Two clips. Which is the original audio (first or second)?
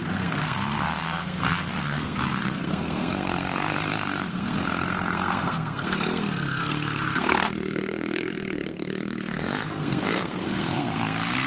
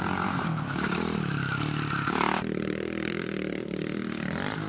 second